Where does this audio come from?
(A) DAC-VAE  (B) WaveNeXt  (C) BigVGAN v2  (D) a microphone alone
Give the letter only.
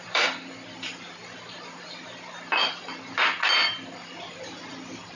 C